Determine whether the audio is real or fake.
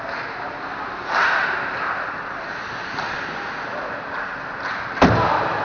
real